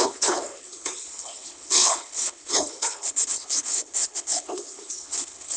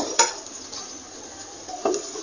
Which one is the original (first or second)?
second